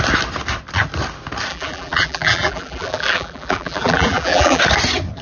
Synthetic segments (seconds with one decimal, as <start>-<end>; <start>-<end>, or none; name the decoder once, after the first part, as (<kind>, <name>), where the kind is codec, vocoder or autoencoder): 1.5-4.6 (vocoder, BigVGAN v2)